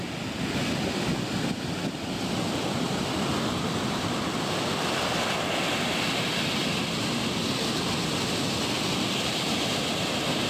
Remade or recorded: recorded